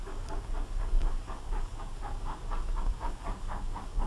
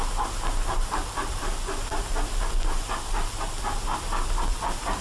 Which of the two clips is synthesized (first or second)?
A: first